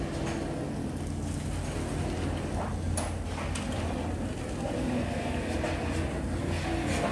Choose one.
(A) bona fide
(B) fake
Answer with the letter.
A